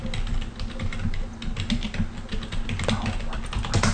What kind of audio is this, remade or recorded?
recorded